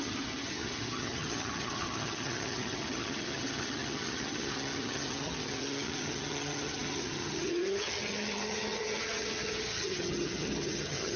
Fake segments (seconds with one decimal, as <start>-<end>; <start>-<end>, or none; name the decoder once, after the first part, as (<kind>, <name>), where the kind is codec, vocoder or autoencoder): 0.0-11.2 (vocoder, HiFi-GAN)